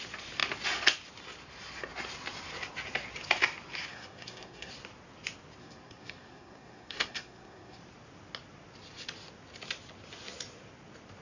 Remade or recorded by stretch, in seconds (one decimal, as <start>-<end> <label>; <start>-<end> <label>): 0.0-3.9 recorded; 3.9-4.7 remade; 4.7-5.6 recorded; 5.6-7.8 remade; 7.8-11.2 recorded